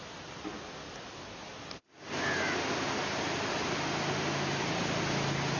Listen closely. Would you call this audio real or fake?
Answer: real